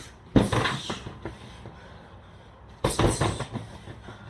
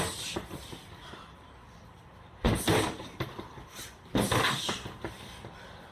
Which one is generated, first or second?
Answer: second